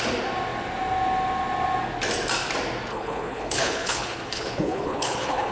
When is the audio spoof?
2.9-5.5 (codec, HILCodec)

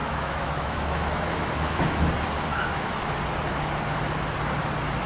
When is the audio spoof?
0.0-2.1 (autoencoder, DAC-VAE); 2.5-3.1

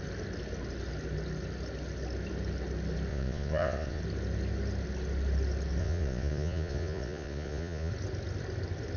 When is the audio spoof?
3.1-4.0 (vocoder, Vocos); 5.8-7.9

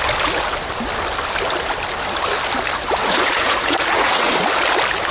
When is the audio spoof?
3.0-4.3 (vocoder, Vocos)

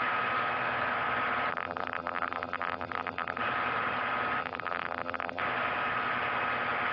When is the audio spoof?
1.5-3.4 (vocoder, BigVGAN v2); 4.4-5.4

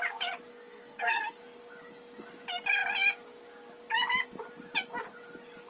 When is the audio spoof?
0.5-1.4 (codec, SNAC)